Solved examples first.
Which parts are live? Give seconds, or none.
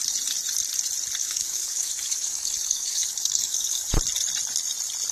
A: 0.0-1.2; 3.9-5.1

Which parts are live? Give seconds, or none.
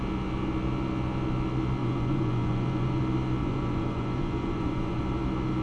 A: 0.0-1.8; 3.0-3.4; 5.0-5.6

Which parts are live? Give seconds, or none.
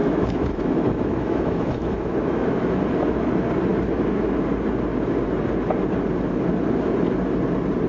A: 2.8-7.9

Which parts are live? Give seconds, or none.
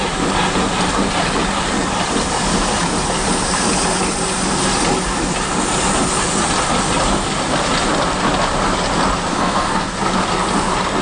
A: 0.0-9.3; 9.9-11.0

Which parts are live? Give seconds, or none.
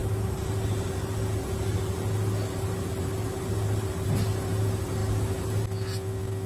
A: 0.0-6.5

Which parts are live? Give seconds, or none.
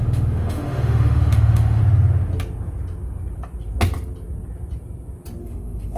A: 1.8-5.4